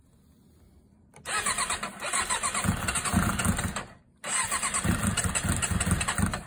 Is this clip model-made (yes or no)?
no